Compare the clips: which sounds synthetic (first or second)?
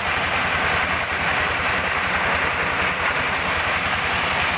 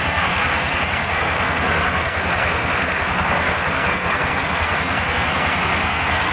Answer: second